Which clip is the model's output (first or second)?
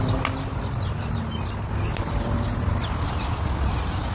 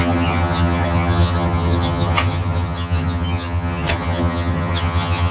second